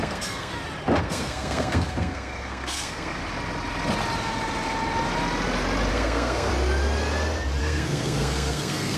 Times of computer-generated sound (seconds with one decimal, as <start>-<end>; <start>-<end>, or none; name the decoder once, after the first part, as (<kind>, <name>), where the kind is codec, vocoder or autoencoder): 0.0-0.5 (codec, SNAC); 1.0-3.2; 5.9-6.5; 7.6-9.0